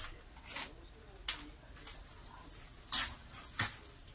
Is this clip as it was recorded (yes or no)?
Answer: yes